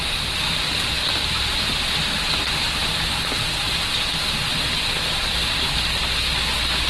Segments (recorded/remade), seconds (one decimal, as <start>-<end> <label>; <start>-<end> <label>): 0.0-6.9 recorded